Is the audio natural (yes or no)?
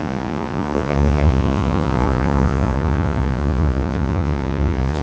no